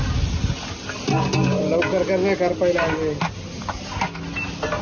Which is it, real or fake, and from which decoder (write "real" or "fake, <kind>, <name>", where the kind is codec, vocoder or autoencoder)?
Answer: real